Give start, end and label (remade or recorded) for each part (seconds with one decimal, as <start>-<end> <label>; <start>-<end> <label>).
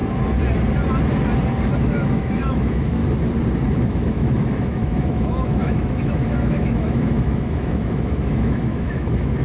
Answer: 0.0-1.8 recorded; 1.8-3.0 remade; 3.0-3.7 recorded; 3.7-9.4 remade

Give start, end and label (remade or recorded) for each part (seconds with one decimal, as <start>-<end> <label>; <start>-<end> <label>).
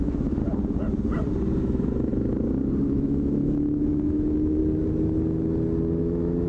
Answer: 0.0-0.4 remade; 0.4-1.6 recorded; 1.6-2.1 remade; 2.1-2.8 recorded; 2.8-4.6 remade; 4.6-6.0 recorded; 6.0-6.5 remade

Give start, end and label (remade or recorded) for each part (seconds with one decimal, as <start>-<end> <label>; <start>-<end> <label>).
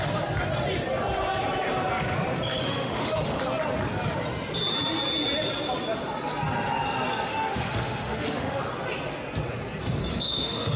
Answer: 0.0-2.6 recorded; 2.6-3.4 remade; 3.4-7.3 recorded; 7.3-8.6 remade; 8.6-10.1 recorded; 10.1-10.8 remade